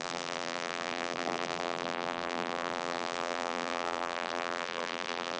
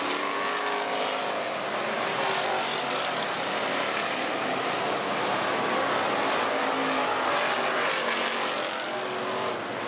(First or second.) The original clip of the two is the second